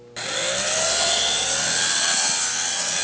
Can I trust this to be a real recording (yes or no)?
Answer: yes